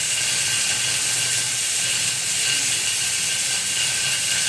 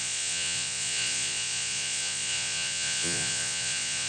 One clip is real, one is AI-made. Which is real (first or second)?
first